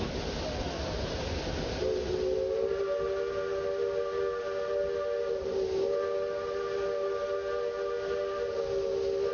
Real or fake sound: real